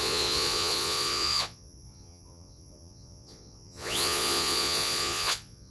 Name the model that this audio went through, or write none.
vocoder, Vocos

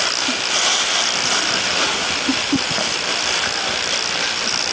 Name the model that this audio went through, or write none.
none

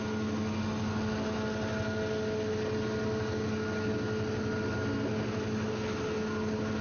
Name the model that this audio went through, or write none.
none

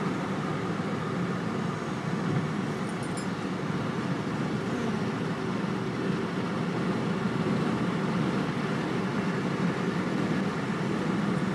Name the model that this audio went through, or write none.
none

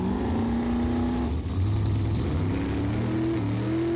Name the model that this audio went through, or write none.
none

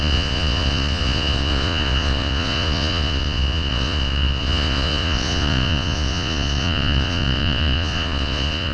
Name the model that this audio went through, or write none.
vocoder, Vocos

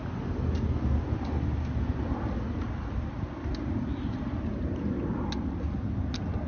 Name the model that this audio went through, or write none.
none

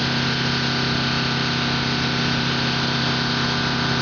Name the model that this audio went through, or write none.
none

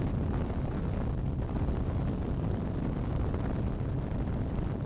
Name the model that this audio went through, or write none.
none